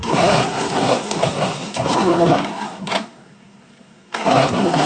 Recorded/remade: remade